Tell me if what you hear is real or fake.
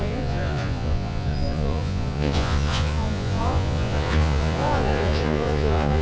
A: fake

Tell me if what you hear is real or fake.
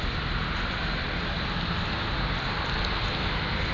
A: real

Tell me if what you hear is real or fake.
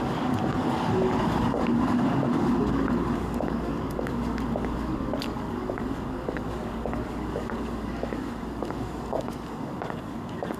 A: fake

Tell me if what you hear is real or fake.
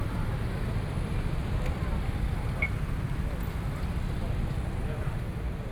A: real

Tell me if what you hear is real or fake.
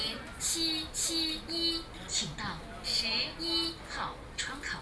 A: real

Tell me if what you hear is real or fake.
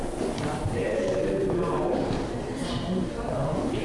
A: fake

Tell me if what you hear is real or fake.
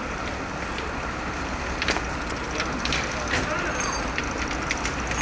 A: real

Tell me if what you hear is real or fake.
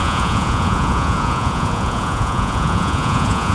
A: fake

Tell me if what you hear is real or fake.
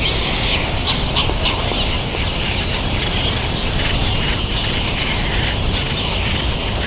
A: real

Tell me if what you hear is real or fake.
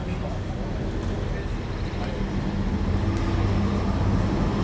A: real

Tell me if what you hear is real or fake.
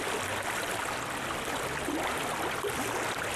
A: real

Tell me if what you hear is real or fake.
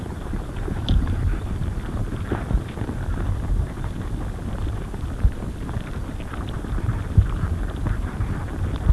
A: fake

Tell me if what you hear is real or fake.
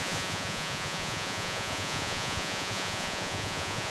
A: fake